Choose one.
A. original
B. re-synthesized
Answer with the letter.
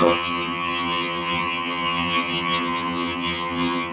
B